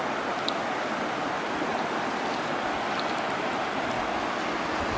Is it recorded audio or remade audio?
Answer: recorded